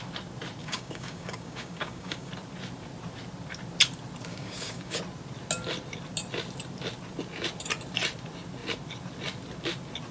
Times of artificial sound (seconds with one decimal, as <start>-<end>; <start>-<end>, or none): 0.6-2.3; 4.3-5.0

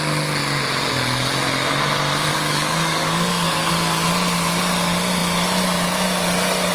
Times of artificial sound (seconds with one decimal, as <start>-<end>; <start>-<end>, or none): 2.3-3.7

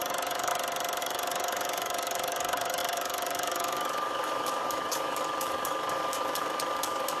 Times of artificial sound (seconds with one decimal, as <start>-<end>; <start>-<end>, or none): 0.0-0.5; 1.0-7.2

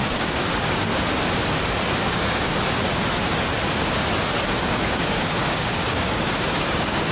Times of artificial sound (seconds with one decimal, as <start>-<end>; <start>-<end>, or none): 0.0-0.9; 2.0-2.5; 4.4-7.1

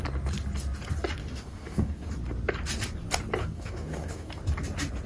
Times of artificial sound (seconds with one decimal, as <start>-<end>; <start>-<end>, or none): 1.2-2.1; 3.4-4.4

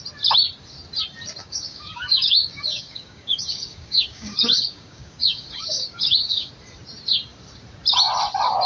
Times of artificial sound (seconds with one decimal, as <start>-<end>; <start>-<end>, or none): 1.4-6.5

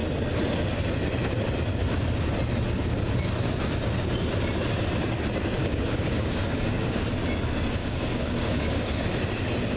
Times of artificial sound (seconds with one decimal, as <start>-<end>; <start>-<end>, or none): 5.6-7.0; 7.8-9.1

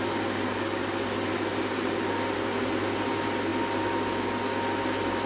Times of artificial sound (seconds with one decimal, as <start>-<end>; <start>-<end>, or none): none